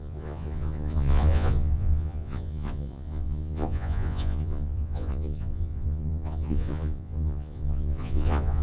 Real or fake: fake